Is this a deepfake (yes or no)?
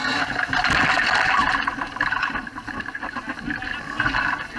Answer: no